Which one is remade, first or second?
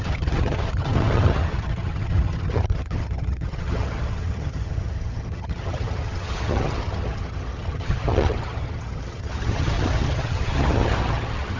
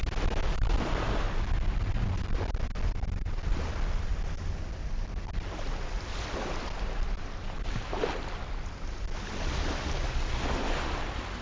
first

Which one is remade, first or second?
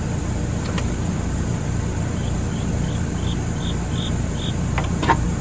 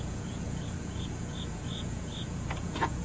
second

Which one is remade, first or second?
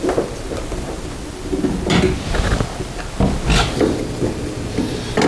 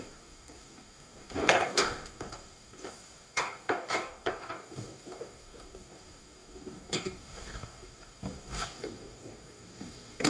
second